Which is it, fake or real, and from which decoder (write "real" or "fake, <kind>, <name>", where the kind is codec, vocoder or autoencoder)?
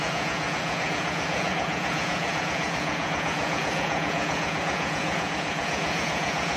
fake, vocoder, Vocos